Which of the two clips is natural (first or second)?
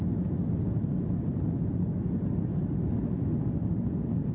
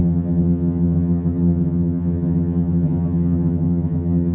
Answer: first